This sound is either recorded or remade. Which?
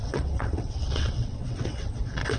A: remade